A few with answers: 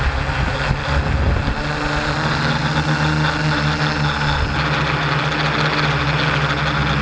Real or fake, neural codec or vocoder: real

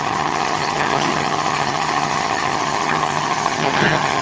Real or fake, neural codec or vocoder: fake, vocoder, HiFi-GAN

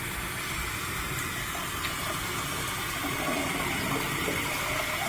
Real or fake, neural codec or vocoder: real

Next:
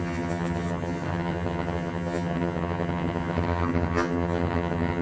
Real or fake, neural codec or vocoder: fake, vocoder, HiFi-GAN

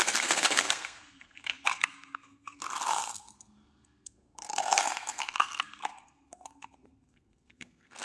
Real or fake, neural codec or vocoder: fake, codec, SNAC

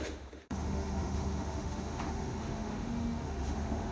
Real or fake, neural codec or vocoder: fake, autoencoder, DAC-VAE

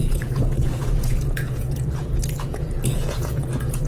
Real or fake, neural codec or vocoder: fake, vocoder, Vocos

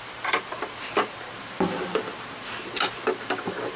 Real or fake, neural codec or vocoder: real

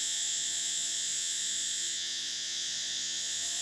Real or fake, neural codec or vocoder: fake, vocoder, Vocos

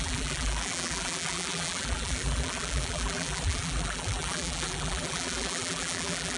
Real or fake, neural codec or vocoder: fake, vocoder, BigVGAN v2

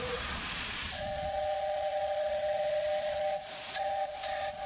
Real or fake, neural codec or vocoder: fake, vocoder, Vocos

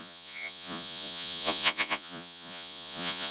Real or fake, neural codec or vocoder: fake, vocoder, Vocos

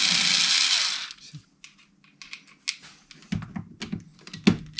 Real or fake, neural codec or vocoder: real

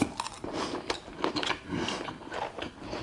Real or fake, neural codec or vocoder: real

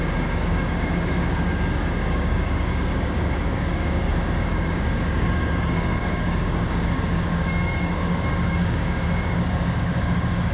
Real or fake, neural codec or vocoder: fake, codec, DAC